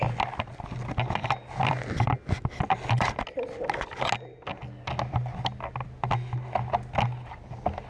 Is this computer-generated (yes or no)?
no